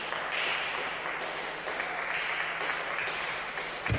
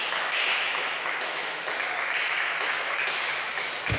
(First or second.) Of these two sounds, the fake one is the second